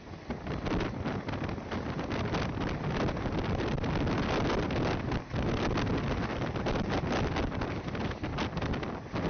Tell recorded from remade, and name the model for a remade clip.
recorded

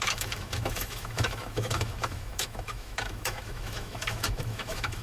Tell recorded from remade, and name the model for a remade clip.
remade, autoencoder, DAC-VAE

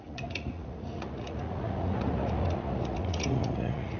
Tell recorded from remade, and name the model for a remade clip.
remade, vocoder, Vocos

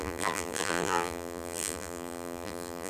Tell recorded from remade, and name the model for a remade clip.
remade, vocoder, BigVGAN v2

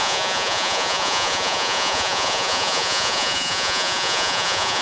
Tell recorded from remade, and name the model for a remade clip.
remade, vocoder, Vocos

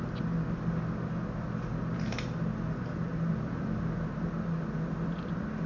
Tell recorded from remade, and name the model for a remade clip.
recorded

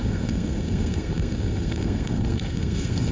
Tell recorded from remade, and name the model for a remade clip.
remade, codec, SNAC